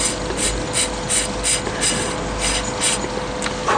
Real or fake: real